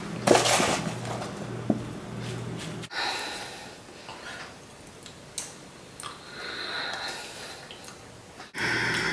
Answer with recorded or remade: recorded